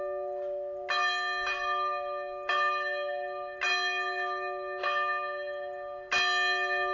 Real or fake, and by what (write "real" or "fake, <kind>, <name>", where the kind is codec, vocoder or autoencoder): real